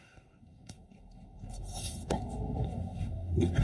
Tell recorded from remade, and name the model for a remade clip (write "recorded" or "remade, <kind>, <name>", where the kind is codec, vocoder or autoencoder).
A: remade, codec, SNAC